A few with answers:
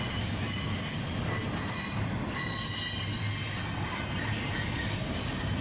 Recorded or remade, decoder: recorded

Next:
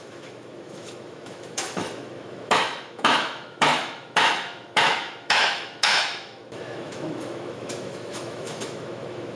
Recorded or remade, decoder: remade, autoencoder, DAC-VAE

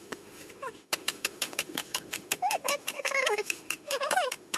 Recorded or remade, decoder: remade, autoencoder, DAC-VAE